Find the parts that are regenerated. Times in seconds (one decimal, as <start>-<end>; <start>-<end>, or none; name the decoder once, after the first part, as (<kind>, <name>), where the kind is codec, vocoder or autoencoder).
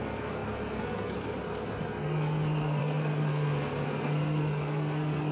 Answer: 0.0-5.3 (codec, SNAC)